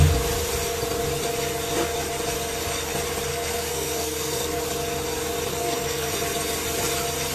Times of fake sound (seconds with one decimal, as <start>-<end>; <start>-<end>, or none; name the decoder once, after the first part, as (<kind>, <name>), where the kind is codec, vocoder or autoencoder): 3.3-4.6 (codec, SNAC); 5.5-6.1